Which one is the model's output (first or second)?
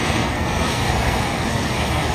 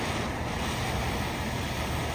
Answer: first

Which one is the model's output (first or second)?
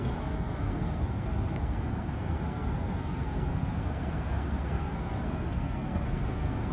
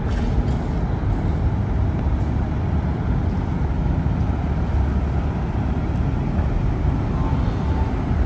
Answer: first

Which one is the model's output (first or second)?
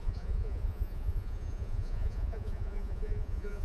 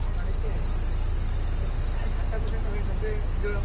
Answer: first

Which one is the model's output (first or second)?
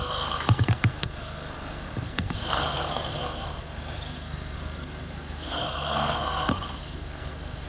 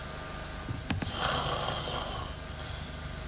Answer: first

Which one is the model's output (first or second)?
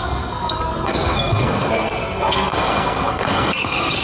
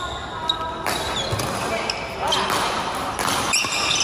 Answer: first